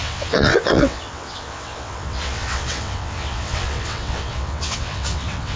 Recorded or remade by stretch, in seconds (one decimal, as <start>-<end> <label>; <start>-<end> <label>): 0.0-5.6 remade